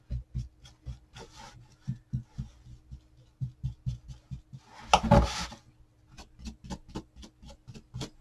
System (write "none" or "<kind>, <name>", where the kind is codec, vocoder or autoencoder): none